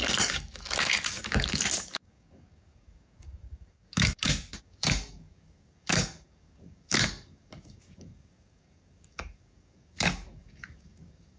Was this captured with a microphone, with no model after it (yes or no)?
no